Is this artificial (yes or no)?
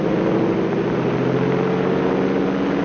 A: no